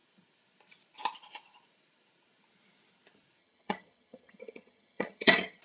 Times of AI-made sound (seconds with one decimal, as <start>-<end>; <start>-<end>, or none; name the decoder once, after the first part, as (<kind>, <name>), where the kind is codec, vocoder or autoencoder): 3.4-5.6 (vocoder, HiFi-GAN)